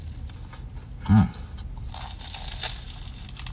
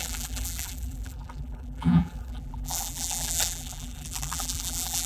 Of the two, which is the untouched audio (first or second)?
first